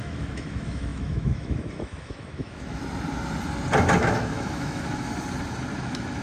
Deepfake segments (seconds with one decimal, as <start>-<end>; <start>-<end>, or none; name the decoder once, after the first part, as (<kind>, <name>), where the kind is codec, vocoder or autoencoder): 0.0-2.8 (autoencoder, DAC-VAE); 4.0-5.1; 5.8-6.2